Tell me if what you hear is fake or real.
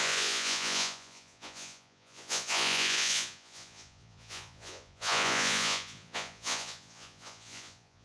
fake